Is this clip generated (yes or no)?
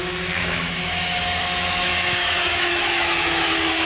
yes